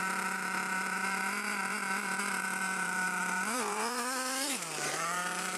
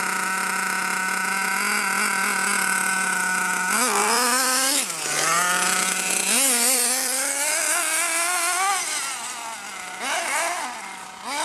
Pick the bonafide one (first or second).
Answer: second